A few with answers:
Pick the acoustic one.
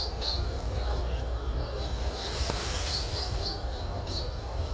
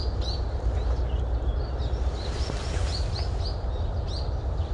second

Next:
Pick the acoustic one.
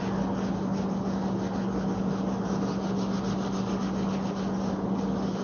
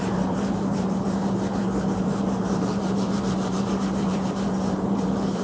first